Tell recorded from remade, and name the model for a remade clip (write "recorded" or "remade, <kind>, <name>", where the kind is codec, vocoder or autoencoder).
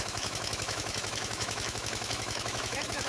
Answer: remade, autoencoder, DAC-VAE